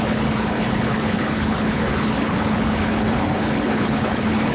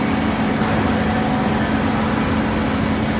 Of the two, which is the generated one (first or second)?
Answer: first